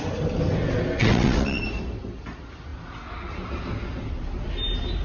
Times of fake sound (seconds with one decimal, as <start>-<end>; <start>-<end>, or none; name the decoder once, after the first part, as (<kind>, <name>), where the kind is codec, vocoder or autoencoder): 1.0-1.6 (vocoder, WaveNeXt)

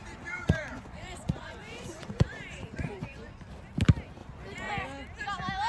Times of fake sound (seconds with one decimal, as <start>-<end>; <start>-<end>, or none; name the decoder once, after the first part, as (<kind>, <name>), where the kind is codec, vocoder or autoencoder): 0.0-3.4 (vocoder, Vocos); 4.2-4.7

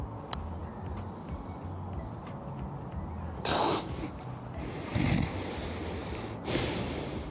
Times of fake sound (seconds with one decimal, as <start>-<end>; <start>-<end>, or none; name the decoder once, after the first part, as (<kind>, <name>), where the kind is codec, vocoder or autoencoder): none

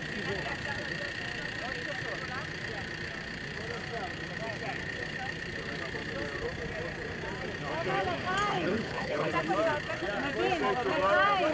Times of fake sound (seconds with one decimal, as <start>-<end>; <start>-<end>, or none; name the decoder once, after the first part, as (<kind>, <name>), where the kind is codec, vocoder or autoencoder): 8.5-9.3 (codec, HILCodec)

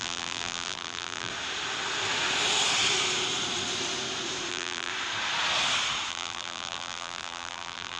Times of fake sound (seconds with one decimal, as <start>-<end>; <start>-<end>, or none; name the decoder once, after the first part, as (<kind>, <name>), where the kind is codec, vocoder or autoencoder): 0.0-1.3 (vocoder, BigVGAN v2); 4.5-4.9; 6.1-8.0